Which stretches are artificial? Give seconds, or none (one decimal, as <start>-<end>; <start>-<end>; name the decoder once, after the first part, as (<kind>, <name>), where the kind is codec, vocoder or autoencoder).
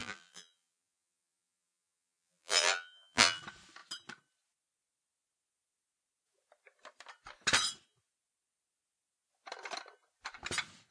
0.0-3.4 (vocoder, BigVGAN v2)